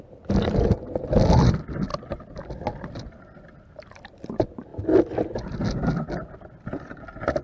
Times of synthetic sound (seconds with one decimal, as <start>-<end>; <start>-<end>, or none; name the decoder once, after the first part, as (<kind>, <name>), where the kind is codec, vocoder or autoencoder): none